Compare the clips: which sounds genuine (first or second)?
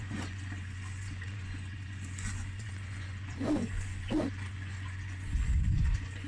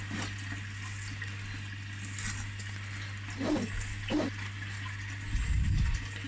second